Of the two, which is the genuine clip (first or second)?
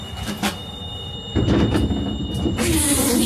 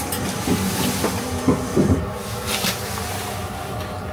second